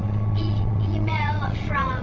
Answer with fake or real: fake